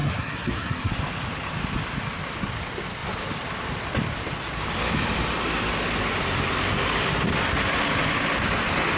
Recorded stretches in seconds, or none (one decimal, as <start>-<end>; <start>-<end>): 0.9-9.0